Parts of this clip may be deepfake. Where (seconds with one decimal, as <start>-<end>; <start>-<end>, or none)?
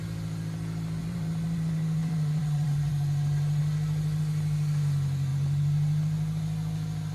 1.0-2.9